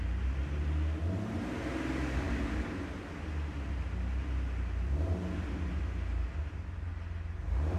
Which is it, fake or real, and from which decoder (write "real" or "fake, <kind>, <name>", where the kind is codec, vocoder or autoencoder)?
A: real